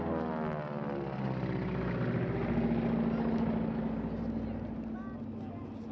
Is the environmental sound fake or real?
real